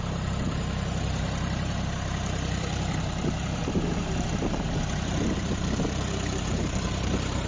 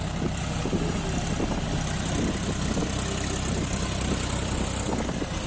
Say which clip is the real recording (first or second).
second